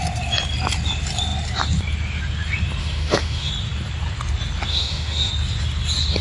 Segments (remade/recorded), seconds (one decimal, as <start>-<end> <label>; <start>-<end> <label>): 0.0-2.8 recorded; 2.8-3.5 remade; 3.5-4.7 recorded; 4.7-5.3 remade; 5.3-6.2 recorded